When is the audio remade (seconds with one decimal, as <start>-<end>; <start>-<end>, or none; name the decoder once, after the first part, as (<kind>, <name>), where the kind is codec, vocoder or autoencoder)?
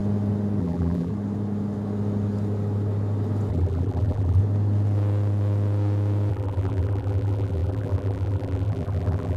0.6-1.1 (vocoder, BigVGAN v2); 3.5-4.4; 6.3-9.4